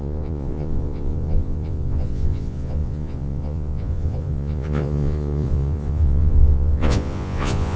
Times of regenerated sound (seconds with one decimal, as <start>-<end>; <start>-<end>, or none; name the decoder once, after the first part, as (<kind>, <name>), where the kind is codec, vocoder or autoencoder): 0.0-7.8 (vocoder, Vocos)